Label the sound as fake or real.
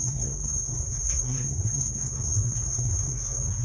fake